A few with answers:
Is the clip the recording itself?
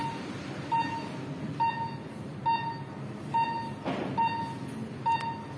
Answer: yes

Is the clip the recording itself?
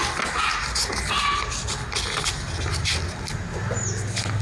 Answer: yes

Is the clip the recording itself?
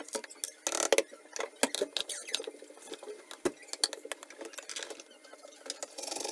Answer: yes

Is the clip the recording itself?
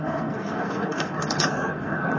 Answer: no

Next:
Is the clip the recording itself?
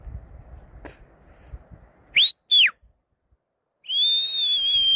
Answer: yes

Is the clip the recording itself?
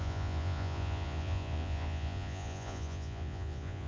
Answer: no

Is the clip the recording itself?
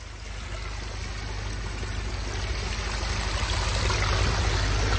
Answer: yes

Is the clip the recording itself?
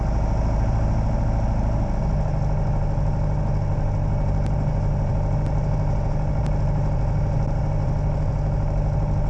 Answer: yes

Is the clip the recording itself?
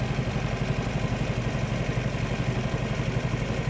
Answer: yes